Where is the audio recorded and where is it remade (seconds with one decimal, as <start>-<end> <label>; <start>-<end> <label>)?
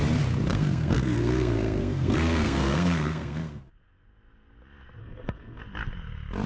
0.0-0.5 recorded; 0.5-3.6 remade; 3.6-5.0 recorded; 5.0-5.6 remade; 5.6-6.5 recorded